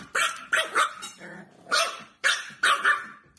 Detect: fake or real real